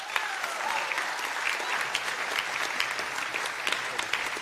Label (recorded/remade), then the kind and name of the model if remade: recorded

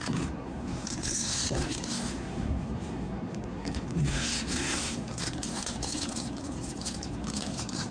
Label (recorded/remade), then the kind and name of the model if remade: remade, codec, SNAC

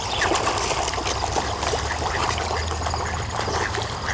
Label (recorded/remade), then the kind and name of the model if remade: recorded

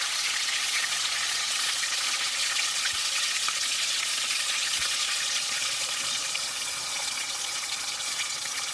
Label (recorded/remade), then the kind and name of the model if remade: remade, vocoder, Vocos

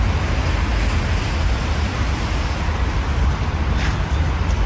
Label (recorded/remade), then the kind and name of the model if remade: recorded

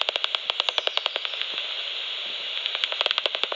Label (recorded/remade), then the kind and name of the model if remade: recorded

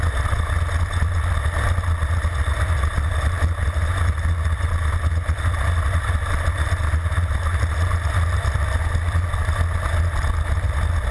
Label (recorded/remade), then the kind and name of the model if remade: recorded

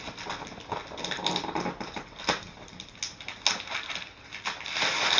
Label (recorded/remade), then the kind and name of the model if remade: recorded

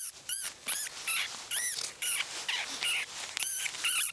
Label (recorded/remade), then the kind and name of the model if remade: recorded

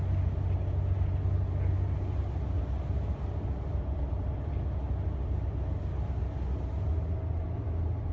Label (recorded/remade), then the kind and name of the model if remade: recorded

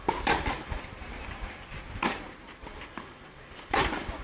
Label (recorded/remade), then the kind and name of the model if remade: remade, vocoder, BigVGAN v2